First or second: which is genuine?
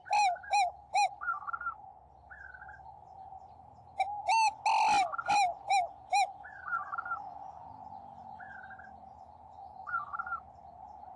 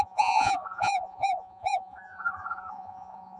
first